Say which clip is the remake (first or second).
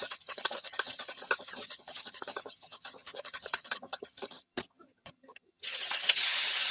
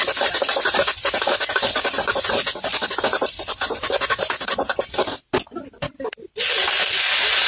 first